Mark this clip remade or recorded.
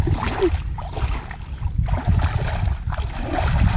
recorded